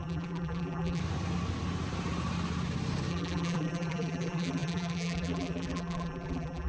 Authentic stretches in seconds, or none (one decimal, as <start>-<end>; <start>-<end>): 1.0-3.1